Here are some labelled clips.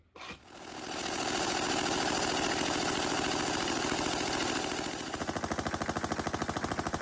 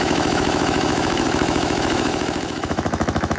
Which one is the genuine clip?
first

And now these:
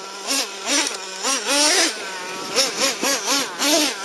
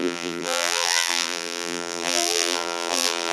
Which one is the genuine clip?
first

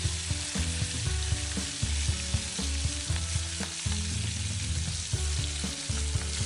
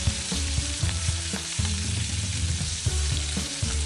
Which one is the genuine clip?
first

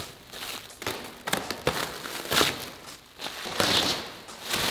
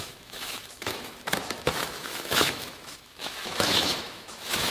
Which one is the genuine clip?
first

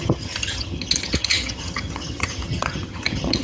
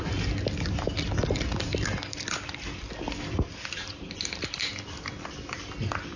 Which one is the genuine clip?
second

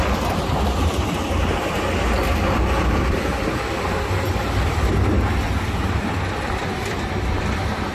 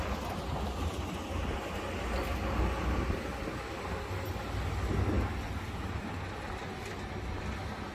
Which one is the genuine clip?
second